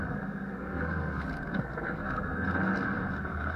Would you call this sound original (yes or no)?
no